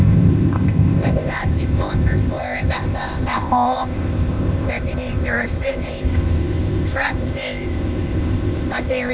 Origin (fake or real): fake